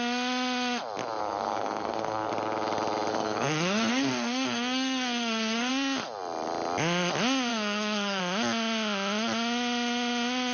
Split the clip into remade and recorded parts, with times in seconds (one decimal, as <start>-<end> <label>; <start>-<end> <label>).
0.0-1.2 recorded; 1.2-2.3 remade; 2.3-3.1 recorded; 3.1-5.7 remade; 5.7-7.5 recorded; 7.5-8.2 remade; 8.2-10.5 recorded